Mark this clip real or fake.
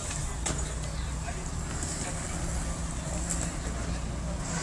real